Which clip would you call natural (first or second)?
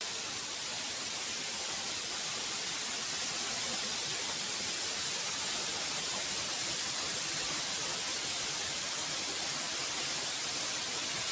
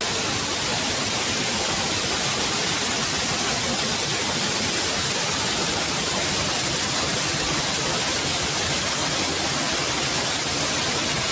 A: second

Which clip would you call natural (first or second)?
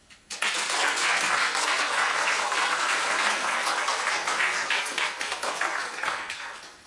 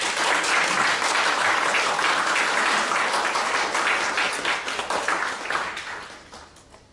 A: second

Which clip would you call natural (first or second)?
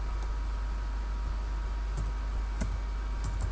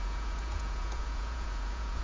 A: first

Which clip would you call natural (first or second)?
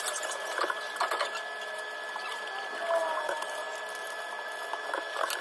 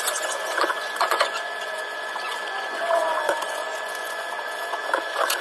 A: first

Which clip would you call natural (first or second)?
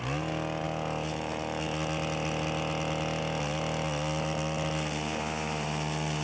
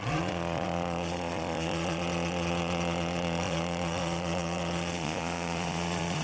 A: first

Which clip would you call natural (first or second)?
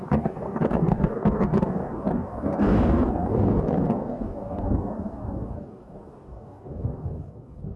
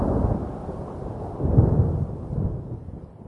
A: second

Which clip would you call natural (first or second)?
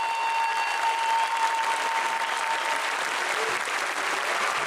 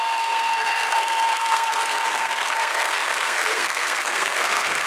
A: first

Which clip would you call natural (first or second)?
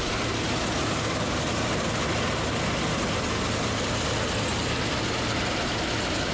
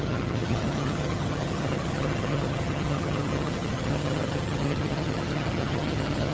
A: first